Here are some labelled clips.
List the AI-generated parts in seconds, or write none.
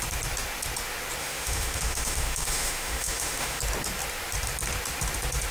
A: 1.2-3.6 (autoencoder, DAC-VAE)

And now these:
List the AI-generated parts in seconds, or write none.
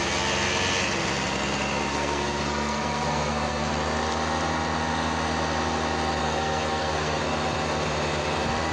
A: 1.9-3.7 (codec, SNAC); 6.2-7.2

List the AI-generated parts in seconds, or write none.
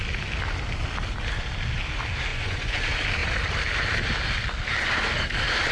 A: 2.3-2.8 (vocoder, Vocos)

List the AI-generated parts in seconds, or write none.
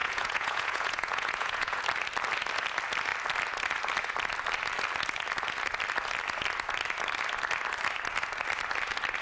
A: 0.0-1.8 (vocoder, Vocos)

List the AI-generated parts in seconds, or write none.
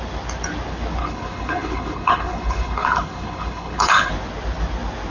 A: 1.0-4.1 (codec, HILCodec)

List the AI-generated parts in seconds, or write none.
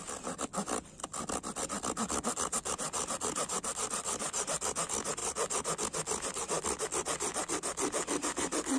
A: none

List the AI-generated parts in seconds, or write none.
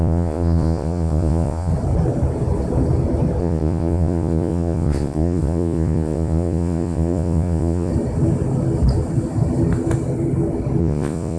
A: 0.0-1.7 (vocoder, Vocos); 3.4-7.9; 10.8-11.4